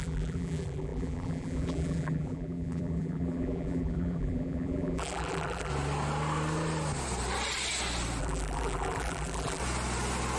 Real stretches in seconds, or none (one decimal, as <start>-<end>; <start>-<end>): 5.7-8.2; 9.6-10.4